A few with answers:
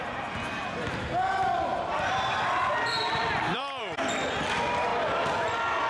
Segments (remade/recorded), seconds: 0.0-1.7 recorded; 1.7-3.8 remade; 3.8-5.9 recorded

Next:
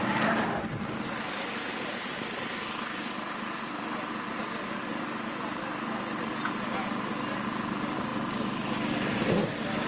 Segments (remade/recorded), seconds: 0.0-2.1 recorded; 2.1-5.6 remade; 5.6-9.9 recorded

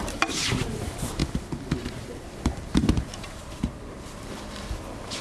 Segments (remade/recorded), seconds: 0.0-5.2 remade

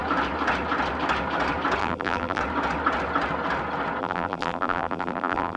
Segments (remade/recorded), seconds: 0.0-1.8 recorded; 1.8-2.4 remade; 2.4-4.0 recorded; 4.0-5.6 remade